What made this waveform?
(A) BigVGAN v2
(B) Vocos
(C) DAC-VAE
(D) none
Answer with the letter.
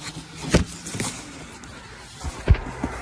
D